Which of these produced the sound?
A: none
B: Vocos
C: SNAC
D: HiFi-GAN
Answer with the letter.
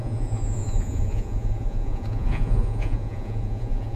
B